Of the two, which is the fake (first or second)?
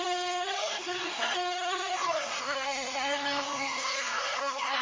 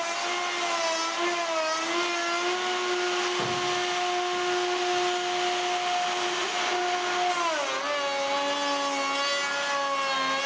first